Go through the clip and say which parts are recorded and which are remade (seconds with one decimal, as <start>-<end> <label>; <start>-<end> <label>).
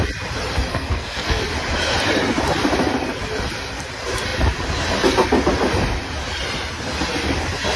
0.0-0.7 recorded; 0.7-1.4 remade; 1.4-7.8 recorded